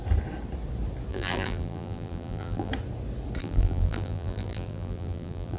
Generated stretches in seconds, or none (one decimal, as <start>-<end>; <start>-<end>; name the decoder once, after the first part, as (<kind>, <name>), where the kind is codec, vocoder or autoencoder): 1.1-2.7 (vocoder, BigVGAN v2); 3.4-5.6